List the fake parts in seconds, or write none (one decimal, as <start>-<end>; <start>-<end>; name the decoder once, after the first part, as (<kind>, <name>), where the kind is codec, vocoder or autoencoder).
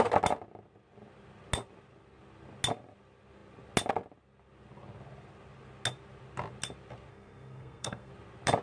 7.1-8.1 (codec, SNAC)